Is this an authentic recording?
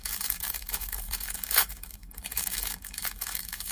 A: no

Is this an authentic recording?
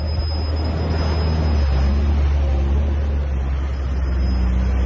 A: yes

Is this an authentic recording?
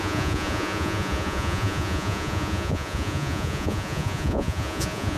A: no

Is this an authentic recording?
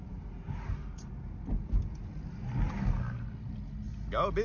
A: yes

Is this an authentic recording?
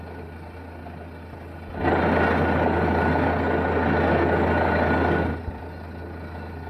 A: yes